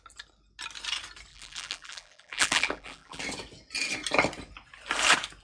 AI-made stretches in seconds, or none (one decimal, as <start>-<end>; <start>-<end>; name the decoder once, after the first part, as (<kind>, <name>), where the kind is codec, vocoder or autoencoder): 1.3-3.2 (vocoder, BigVGAN v2)